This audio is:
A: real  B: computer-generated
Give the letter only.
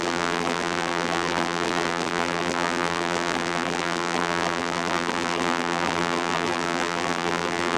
B